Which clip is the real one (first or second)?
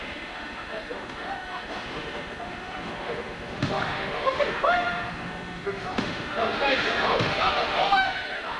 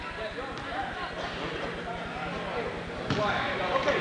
second